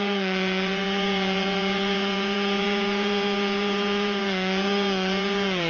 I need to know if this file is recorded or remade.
remade